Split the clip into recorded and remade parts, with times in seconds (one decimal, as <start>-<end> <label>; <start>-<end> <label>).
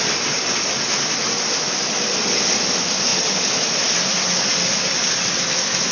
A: 0.0-5.9 recorded